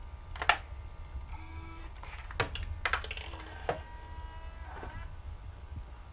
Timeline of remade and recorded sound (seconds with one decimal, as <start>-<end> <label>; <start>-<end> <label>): 0.0-1.3 recorded; 1.3-1.8 remade; 1.8-6.1 recorded